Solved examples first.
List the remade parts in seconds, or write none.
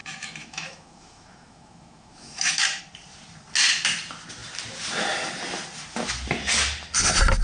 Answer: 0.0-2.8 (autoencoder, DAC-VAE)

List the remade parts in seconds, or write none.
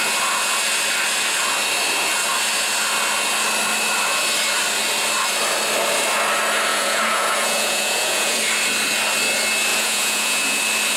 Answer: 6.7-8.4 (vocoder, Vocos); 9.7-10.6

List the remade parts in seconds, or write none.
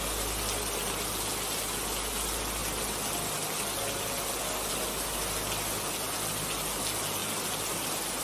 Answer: none